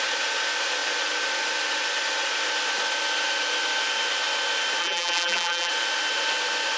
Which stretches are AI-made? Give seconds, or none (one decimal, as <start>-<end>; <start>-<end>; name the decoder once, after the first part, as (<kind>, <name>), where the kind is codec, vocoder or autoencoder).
4.8-5.7 (vocoder, BigVGAN v2)